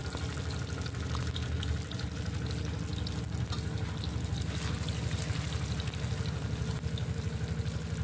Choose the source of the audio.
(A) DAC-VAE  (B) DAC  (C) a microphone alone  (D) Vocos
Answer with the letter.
C